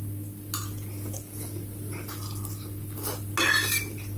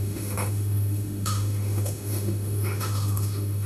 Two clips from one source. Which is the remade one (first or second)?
second